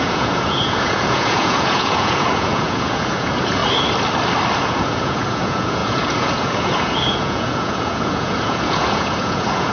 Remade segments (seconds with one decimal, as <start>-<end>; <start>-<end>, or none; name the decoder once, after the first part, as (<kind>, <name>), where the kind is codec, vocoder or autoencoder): 0.0-3.6 (vocoder, Vocos); 4.6-9.7